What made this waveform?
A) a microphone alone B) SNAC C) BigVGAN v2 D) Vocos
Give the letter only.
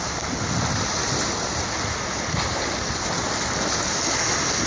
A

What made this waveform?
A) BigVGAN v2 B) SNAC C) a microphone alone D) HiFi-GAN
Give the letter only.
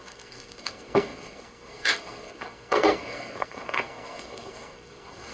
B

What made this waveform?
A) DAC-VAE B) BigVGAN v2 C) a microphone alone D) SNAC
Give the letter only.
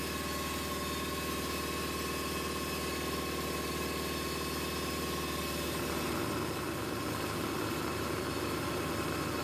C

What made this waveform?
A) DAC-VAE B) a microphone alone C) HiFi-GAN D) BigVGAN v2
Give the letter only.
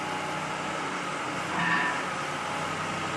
B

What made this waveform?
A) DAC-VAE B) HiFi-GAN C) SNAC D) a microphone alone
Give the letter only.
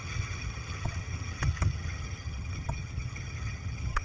B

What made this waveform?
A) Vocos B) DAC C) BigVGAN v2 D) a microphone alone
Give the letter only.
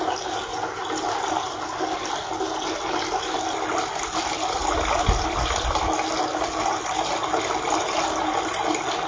D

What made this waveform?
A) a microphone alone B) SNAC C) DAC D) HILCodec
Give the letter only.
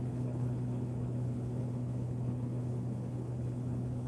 D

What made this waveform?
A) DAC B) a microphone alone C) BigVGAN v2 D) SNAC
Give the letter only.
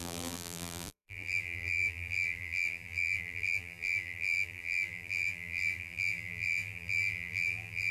C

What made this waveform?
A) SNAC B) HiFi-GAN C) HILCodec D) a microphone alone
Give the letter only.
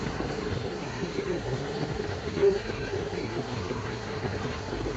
A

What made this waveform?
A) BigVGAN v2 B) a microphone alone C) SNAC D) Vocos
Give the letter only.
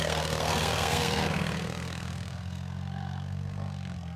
C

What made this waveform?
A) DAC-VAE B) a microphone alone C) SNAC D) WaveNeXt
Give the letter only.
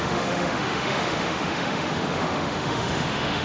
A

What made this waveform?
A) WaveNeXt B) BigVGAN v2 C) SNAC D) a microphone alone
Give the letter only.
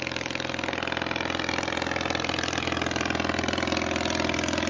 D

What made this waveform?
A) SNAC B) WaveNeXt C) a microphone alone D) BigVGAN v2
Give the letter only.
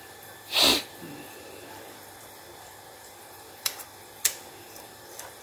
D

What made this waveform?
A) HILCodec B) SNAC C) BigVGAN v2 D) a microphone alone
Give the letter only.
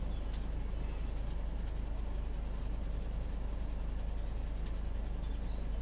D